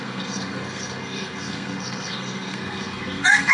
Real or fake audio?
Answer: fake